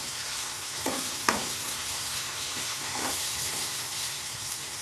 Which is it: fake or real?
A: fake